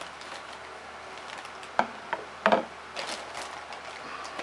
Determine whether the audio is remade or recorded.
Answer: recorded